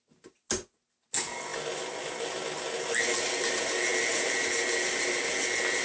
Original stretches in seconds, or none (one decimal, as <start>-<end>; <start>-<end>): 0.0-5.8